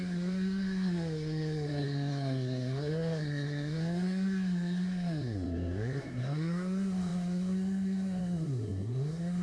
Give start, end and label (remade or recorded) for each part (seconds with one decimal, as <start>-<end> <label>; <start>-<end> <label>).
0.0-9.4 remade